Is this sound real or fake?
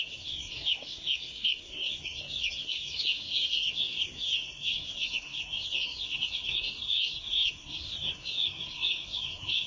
fake